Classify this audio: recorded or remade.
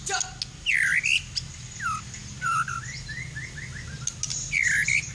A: recorded